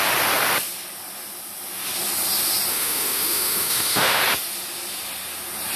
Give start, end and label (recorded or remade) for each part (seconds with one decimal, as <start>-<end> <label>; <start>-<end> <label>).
0.0-2.7 recorded; 2.7-4.2 remade; 4.2-5.8 recorded

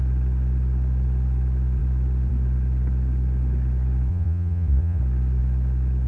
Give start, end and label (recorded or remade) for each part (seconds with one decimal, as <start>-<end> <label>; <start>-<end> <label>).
0.0-4.1 recorded; 4.1-5.0 remade; 5.0-6.1 recorded

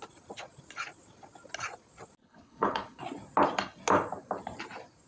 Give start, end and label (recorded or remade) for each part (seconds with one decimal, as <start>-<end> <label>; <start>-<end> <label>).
0.0-2.2 recorded; 2.2-3.0 remade; 3.0-5.1 recorded

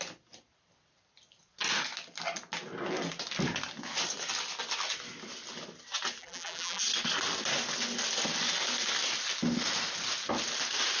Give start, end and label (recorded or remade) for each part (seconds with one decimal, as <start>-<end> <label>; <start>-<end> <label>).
0.0-6.2 recorded; 6.2-6.8 remade; 6.8-11.0 recorded

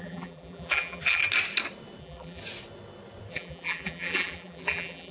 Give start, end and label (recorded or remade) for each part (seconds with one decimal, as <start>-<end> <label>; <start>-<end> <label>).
0.0-1.2 remade; 1.2-2.0 recorded; 2.0-2.4 remade; 2.4-3.3 recorded; 3.3-5.1 remade

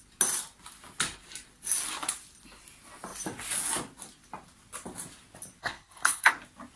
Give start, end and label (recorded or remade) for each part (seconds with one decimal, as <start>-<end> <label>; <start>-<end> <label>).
0.0-5.6 recorded; 5.6-6.3 remade; 6.3-6.8 recorded

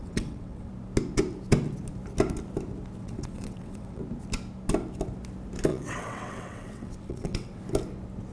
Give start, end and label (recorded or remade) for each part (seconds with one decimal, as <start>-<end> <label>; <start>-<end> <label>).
0.0-0.7 remade; 0.7-3.0 recorded; 3.0-4.0 remade; 4.0-5.7 recorded; 5.7-7.6 remade; 7.6-8.3 recorded